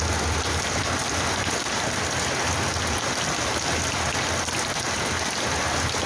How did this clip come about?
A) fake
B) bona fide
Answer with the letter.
B